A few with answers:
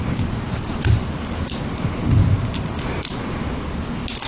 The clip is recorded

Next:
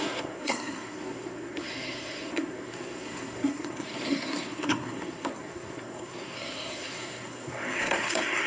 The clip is remade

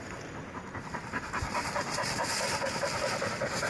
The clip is recorded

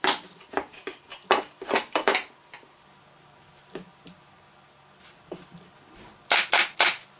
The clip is recorded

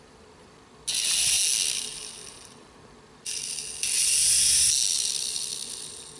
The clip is recorded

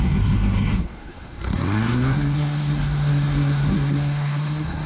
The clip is remade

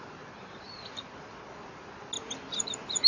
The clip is recorded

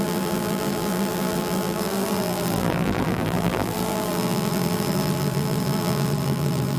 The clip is remade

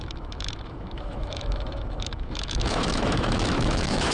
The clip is remade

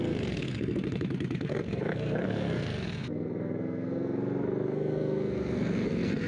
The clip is remade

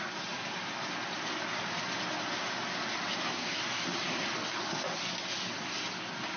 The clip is recorded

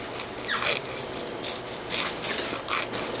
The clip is recorded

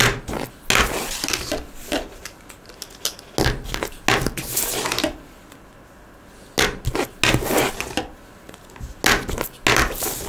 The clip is recorded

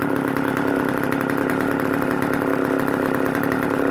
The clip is recorded